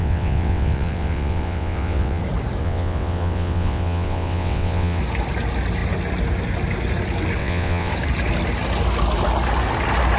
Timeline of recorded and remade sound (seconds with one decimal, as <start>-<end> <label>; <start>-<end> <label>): 0.0-2.2 remade; 2.2-2.6 recorded; 2.6-5.0 remade; 5.0-7.4 recorded; 7.4-7.9 remade; 7.9-10.2 recorded